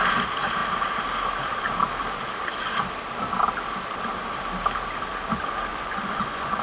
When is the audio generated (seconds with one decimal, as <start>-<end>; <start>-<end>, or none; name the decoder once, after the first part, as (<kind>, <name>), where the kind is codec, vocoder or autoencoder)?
5.7-6.6 (vocoder, Vocos)